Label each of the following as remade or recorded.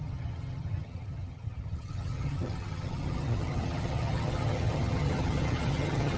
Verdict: remade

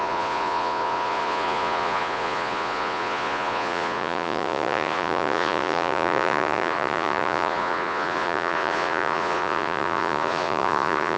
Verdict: remade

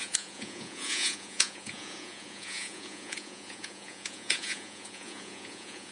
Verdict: remade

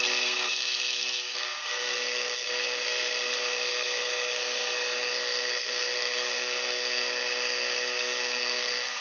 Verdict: remade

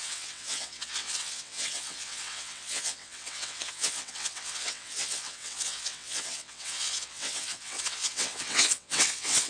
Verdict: remade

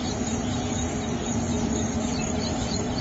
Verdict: recorded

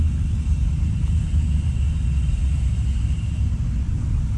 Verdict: recorded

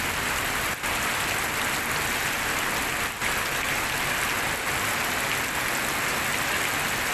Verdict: recorded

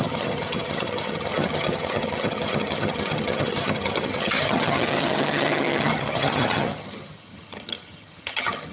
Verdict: remade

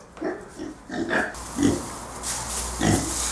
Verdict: recorded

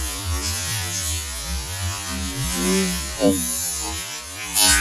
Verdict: recorded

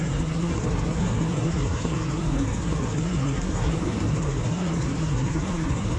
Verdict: remade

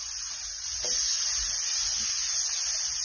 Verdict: recorded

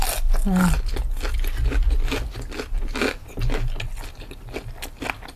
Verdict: recorded